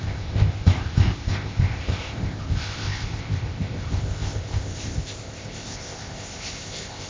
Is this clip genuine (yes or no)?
no